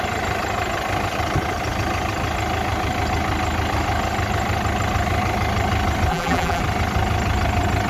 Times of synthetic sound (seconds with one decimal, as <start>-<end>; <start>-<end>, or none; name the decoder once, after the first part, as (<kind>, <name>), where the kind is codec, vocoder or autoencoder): 6.1-6.6 (vocoder, BigVGAN v2)